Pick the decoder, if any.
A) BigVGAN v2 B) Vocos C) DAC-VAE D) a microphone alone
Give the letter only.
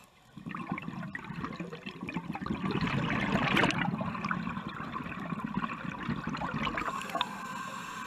D